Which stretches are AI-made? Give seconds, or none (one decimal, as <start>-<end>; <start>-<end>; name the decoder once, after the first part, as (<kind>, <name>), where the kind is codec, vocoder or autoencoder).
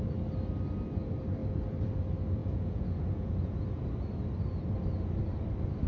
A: 2.4-3.8 (vocoder, Vocos)